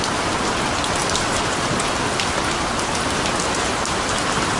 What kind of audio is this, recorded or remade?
recorded